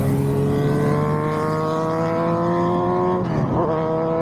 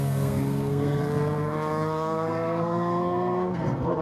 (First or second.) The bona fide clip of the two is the first